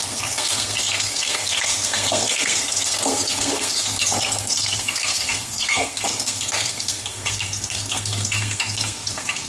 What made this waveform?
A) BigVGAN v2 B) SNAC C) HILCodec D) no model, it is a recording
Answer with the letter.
B